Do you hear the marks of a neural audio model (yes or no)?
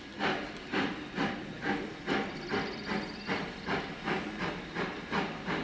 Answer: no